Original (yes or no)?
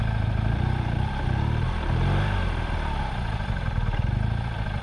no